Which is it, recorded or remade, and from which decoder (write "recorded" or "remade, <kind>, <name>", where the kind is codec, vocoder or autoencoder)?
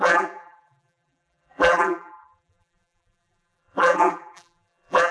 remade, vocoder, BigVGAN v2